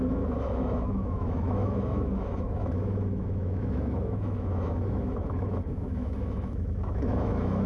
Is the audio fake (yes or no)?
yes